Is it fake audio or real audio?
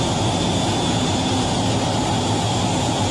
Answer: real